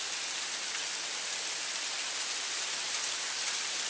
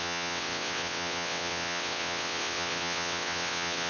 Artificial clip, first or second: second